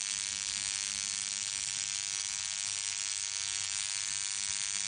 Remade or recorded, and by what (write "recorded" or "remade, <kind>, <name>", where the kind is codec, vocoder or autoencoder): recorded